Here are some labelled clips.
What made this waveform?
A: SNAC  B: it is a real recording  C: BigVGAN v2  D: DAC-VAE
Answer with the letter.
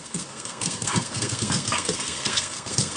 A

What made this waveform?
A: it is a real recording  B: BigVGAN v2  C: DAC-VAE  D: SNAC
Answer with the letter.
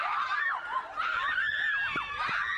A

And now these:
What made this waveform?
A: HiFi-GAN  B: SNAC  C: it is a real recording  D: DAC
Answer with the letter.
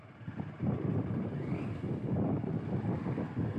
C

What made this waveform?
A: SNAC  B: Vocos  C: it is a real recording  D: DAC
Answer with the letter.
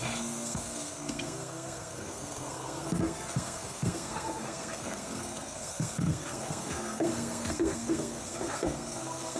A